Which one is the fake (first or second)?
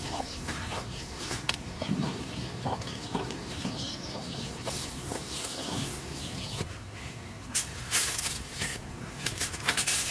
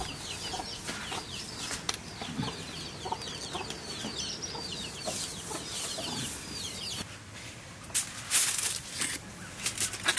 first